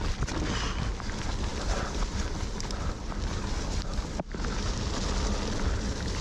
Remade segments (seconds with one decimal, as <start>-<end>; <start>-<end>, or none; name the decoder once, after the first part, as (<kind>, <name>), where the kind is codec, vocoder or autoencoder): 1.5-2.2 (vocoder, BigVGAN v2)